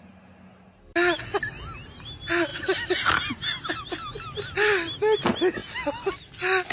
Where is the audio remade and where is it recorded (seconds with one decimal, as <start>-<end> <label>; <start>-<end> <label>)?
0.0-6.7 recorded